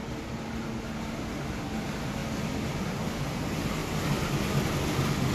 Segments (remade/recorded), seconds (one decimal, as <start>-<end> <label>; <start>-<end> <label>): 0.0-5.3 recorded